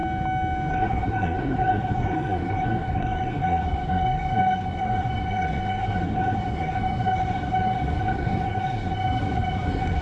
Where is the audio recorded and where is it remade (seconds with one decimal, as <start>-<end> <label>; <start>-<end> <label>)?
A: 0.0-0.7 recorded; 0.7-10.0 remade